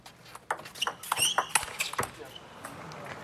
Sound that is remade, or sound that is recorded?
recorded